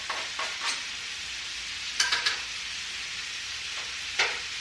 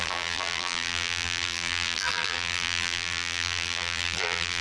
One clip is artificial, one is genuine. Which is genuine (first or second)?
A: first